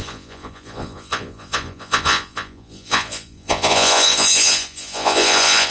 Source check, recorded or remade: remade